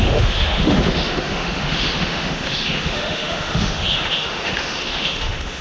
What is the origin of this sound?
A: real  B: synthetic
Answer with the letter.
B